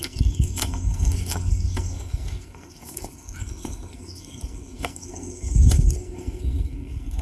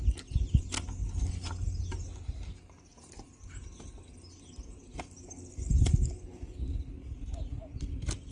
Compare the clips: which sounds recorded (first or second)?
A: second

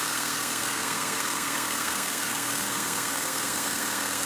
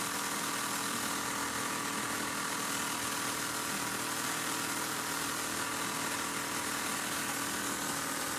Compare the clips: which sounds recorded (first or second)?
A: second